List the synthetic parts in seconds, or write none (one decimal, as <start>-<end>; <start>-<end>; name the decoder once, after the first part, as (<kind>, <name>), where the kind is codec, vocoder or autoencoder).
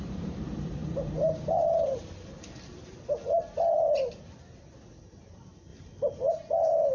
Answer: 0.0-2.0 (vocoder, BigVGAN v2); 5.2-5.7; 6.3-6.9